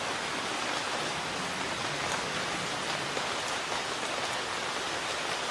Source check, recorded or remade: recorded